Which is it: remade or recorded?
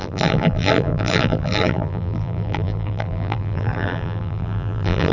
remade